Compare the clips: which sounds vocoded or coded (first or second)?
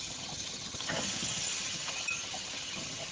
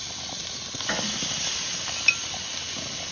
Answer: first